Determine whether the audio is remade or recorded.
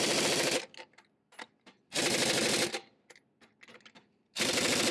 recorded